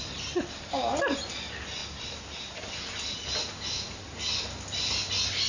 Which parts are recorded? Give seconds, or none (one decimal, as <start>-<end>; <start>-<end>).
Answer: 0.0-5.5